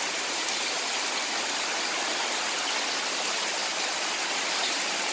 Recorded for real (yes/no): yes